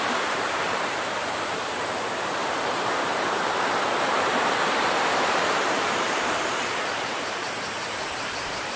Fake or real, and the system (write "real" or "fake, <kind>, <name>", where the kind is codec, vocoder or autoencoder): fake, vocoder, BigVGAN v2